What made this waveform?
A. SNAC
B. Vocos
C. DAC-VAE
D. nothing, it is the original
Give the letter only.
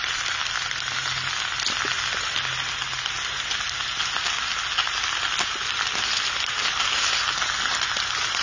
D